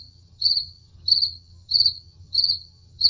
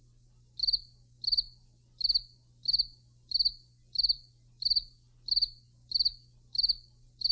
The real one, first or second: second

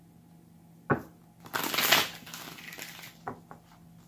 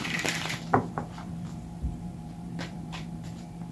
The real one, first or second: first